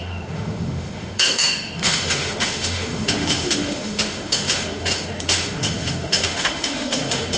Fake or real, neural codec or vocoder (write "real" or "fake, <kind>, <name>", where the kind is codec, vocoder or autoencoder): fake, autoencoder, DAC-VAE